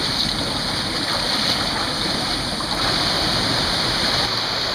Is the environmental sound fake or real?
real